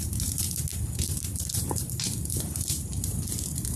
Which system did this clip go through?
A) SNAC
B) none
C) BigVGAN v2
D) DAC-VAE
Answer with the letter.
C